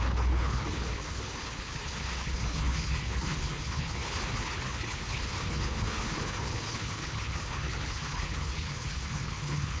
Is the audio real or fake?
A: fake